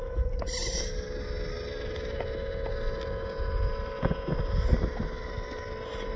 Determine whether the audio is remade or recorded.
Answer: recorded